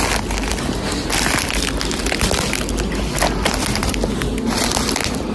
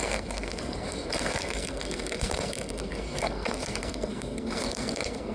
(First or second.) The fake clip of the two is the second